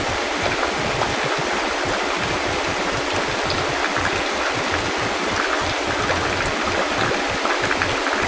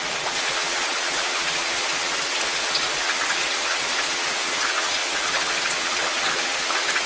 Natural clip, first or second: first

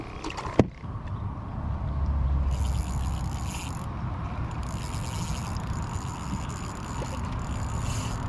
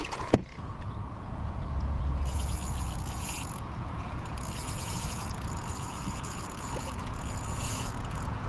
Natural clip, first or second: first